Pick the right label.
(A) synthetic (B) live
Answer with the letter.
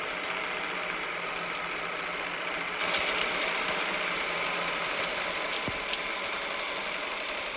B